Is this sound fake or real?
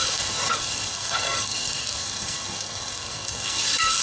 fake